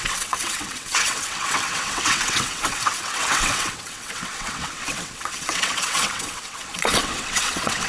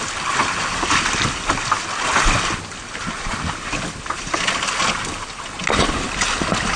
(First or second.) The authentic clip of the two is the second